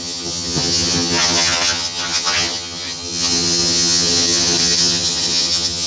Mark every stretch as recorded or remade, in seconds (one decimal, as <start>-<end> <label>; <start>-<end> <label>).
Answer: 0.0-5.9 remade

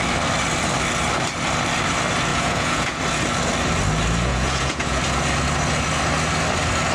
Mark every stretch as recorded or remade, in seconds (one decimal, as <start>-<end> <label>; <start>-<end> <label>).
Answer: 0.0-2.3 recorded; 2.3-3.0 remade; 3.0-4.3 recorded; 4.3-5.0 remade; 5.0-6.9 recorded

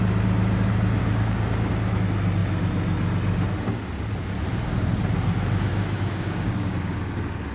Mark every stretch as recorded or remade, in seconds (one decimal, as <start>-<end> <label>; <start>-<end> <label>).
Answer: 0.0-1.0 recorded; 1.0-1.7 remade; 1.7-5.7 recorded; 5.7-7.0 remade; 7.0-7.5 recorded

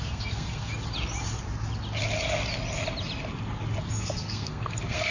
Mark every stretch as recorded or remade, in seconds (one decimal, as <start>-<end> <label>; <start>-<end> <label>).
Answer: 0.0-0.7 remade; 0.7-3.8 recorded; 3.8-5.1 remade

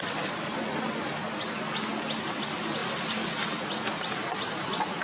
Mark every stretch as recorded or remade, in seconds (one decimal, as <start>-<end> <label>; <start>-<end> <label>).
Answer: 0.0-5.0 recorded

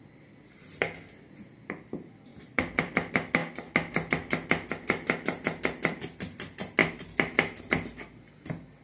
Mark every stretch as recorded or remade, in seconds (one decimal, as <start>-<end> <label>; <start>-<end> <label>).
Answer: 0.0-2.3 recorded; 2.3-2.9 remade; 2.9-8.8 recorded

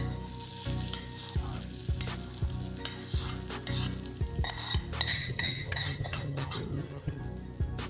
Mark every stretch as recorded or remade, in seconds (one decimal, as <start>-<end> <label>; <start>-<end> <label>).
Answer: 0.0-5.1 recorded; 5.1-7.2 remade; 7.2-7.9 recorded

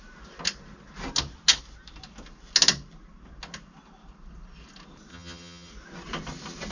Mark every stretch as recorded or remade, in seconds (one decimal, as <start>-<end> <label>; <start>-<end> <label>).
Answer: 0.0-5.1 recorded; 5.1-5.7 remade; 5.7-6.7 recorded